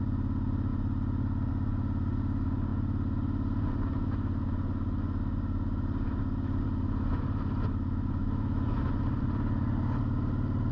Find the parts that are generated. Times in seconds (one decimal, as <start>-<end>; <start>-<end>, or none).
8.2-8.9